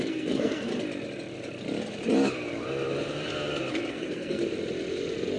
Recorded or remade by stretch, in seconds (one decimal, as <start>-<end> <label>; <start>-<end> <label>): 0.0-0.7 remade; 0.7-3.9 recorded; 3.9-4.4 remade; 4.4-5.4 recorded